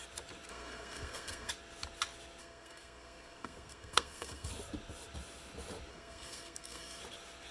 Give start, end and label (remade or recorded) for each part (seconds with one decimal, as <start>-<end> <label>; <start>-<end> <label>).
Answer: 0.0-0.5 recorded; 0.5-1.5 remade; 1.5-2.4 recorded; 2.4-4.5 remade; 4.5-5.9 recorded; 5.9-7.0 remade; 7.0-7.5 recorded